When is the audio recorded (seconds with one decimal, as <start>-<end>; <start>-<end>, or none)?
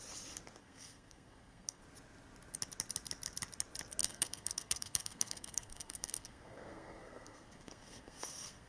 0.0-0.6; 1.8-4.0